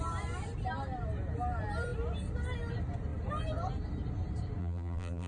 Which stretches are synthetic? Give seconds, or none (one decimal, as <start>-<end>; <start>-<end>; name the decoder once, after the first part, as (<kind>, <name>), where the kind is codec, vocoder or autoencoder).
4.6-5.3 (vocoder, BigVGAN v2)